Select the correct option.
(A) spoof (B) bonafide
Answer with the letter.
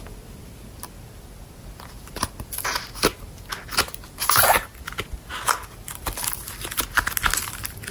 B